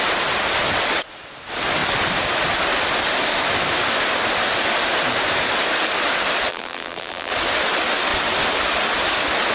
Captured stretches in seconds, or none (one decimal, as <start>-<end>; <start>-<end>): 0.0-6.5; 7.3-9.5